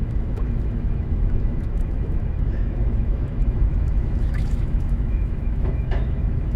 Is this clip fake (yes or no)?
yes